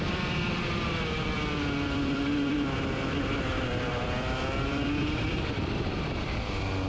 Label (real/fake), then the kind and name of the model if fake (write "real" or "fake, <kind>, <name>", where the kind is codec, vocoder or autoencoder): fake, vocoder, BigVGAN v2